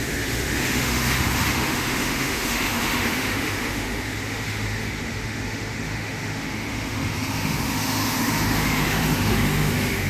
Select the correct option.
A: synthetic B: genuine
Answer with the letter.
A